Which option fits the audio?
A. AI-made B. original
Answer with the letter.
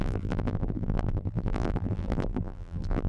A